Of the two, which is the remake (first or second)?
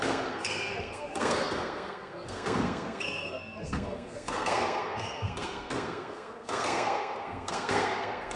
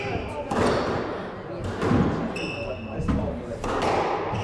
first